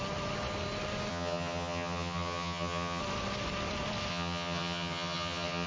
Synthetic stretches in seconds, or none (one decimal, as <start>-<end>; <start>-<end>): 1.1-3.0; 4.1-5.7